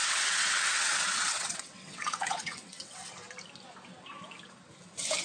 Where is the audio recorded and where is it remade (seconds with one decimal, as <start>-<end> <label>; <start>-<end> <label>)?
0.0-3.1 remade; 3.1-5.2 recorded